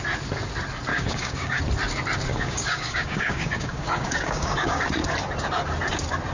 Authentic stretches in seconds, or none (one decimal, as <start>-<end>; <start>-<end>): 0.0-0.9; 1.6-2.3; 4.8-6.3